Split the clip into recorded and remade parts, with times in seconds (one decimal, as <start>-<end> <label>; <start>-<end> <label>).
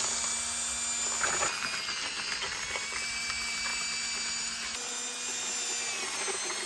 0.0-6.7 recorded